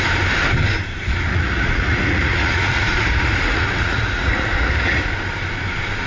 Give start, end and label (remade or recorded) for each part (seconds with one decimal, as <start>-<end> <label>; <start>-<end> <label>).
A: 0.0-1.3 recorded; 1.3-5.0 remade; 5.0-6.1 recorded